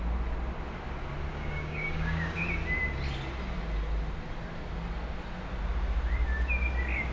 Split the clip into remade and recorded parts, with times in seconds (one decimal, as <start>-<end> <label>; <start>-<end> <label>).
0.0-1.3 recorded; 1.3-2.4 remade; 2.4-7.1 recorded